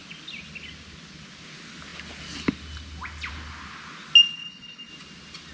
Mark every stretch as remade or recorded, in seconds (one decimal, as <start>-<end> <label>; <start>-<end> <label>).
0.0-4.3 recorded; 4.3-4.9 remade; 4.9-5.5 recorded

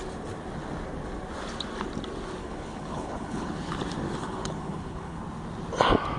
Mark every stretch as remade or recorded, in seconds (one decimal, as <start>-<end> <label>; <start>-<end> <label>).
0.0-2.4 recorded; 2.4-3.7 remade; 3.7-4.2 recorded; 4.2-5.2 remade; 5.2-6.2 recorded

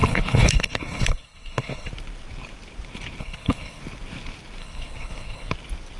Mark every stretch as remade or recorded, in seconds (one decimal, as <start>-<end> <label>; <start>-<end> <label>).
0.0-1.9 remade; 1.9-3.2 recorded; 3.2-3.8 remade; 3.8-4.6 recorded; 4.6-5.5 remade; 5.5-6.0 recorded

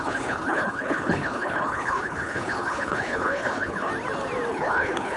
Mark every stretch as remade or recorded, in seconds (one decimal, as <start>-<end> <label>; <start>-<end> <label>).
0.0-3.9 remade; 3.9-4.5 recorded; 4.5-5.2 remade

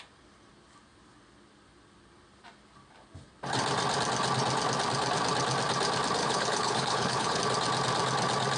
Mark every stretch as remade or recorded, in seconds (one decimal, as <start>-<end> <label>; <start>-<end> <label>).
0.0-6.2 recorded; 6.2-7.4 remade; 7.4-8.6 recorded

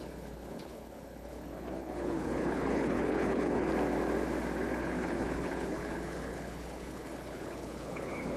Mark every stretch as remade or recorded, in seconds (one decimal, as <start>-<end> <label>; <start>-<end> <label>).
0.0-3.7 remade; 3.7-4.8 recorded; 4.8-8.4 remade

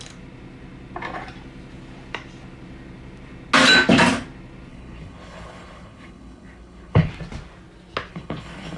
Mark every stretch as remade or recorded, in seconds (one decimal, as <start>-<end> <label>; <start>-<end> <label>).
0.0-4.7 recorded; 4.7-7.1 remade; 7.1-8.1 recorded; 8.1-8.8 remade

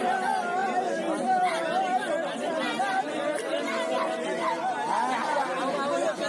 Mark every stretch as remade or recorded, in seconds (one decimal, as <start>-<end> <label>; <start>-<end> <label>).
0.0-6.3 recorded